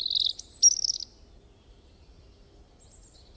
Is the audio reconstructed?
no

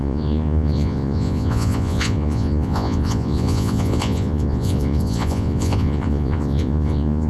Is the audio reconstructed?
yes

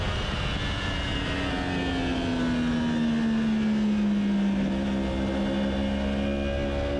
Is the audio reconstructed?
no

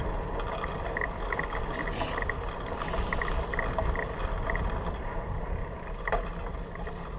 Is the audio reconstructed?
no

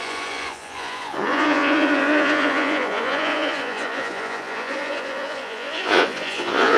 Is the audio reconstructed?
yes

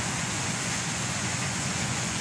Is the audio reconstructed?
yes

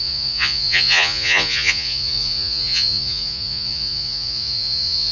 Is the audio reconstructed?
yes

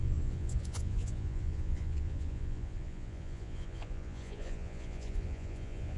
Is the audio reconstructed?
yes